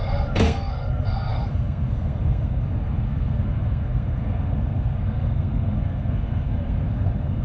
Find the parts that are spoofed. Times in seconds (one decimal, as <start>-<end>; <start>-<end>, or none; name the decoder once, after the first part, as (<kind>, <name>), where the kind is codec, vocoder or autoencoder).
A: 0.0-7.4 (codec, SNAC)